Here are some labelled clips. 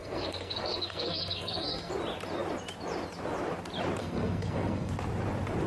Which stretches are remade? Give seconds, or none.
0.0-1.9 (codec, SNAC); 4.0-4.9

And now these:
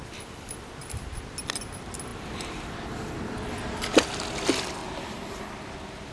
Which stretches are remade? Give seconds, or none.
0.0-0.8 (vocoder, BigVGAN v2)